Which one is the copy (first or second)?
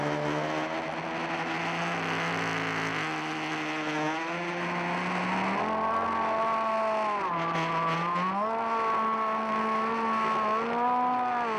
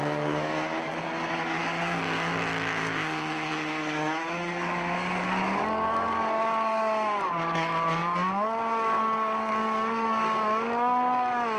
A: second